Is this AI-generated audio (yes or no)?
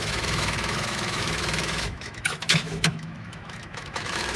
yes